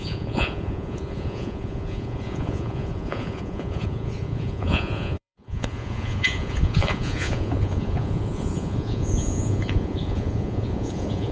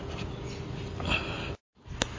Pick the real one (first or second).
second